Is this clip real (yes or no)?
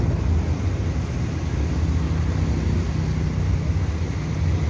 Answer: yes